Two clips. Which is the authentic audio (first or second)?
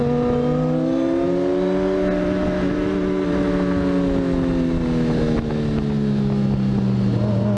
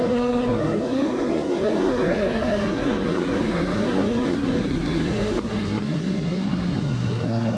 first